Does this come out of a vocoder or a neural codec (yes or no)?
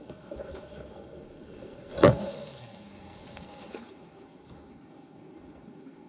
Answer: yes